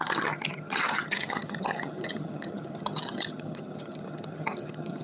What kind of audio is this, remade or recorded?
remade